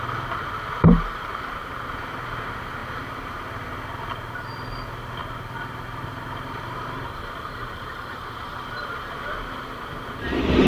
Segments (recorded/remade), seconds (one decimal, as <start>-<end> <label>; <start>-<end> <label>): 0.0-0.4 recorded; 0.4-1.5 remade; 1.5-5.2 recorded; 5.2-8.9 remade; 8.9-10.7 recorded